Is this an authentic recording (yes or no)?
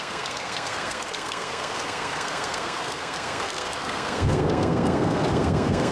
no